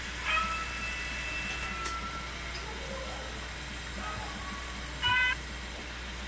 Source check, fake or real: real